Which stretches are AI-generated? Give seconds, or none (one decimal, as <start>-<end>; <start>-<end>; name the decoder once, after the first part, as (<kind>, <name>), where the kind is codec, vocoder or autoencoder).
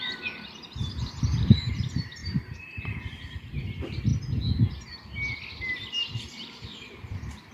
0.0-4.1 (vocoder, BigVGAN v2); 5.6-7.5